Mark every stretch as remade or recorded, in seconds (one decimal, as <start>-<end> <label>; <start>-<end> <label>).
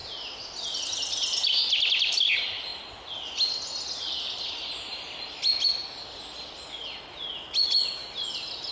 0.0-0.8 remade; 0.8-8.7 recorded